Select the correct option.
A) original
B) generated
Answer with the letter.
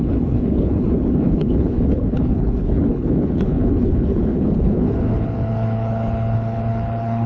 B